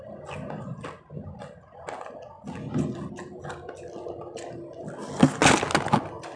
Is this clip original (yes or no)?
yes